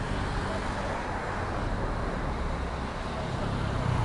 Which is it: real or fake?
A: real